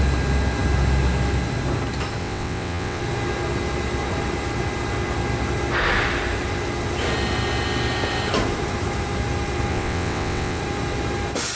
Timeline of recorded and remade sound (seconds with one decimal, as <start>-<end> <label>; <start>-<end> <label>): 0.0-2.2 recorded; 2.2-3.0 remade; 3.0-9.7 recorded; 9.7-10.6 remade; 10.6-11.6 recorded